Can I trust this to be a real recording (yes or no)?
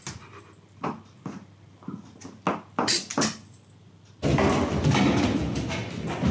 yes